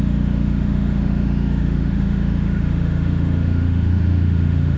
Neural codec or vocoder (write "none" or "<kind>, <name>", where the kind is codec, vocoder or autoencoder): autoencoder, DAC-VAE